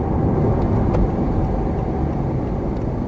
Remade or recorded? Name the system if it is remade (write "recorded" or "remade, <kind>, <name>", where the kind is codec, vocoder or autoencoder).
recorded